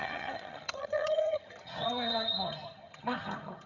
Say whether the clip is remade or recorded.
remade